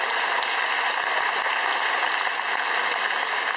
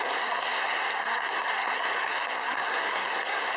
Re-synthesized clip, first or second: second